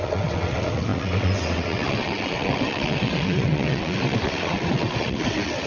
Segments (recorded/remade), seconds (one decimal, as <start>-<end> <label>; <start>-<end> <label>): 0.0-5.7 remade